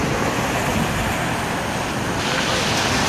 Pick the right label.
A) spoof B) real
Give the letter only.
B